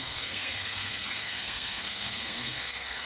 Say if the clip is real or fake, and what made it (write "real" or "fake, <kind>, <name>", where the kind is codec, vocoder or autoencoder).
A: fake, codec, SNAC